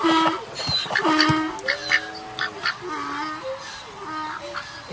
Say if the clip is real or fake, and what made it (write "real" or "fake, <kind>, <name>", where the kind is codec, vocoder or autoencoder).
real